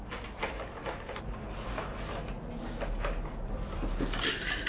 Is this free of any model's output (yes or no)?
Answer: yes